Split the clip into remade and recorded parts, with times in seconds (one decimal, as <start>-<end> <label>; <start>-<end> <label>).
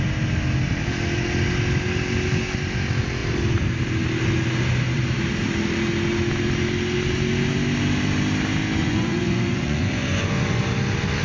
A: 0.0-8.8 recorded; 8.8-10.6 remade; 10.6-11.2 recorded